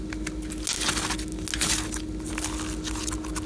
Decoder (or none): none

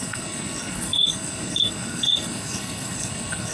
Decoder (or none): codec, SNAC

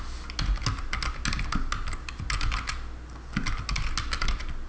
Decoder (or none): none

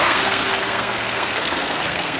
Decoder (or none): codec, SNAC